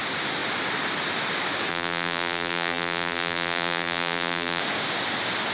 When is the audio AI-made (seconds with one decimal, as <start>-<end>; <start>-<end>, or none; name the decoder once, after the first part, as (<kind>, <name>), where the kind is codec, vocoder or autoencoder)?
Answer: 1.7-4.6 (vocoder, BigVGAN v2)